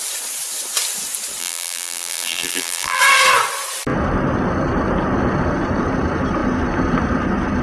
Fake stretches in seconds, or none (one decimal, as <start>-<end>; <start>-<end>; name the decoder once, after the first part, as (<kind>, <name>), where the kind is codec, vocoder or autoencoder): 1.4-3.0 (vocoder, BigVGAN v2)